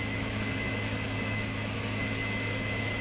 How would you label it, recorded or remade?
remade